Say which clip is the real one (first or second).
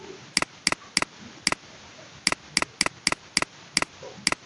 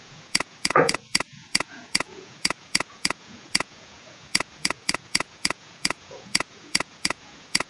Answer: first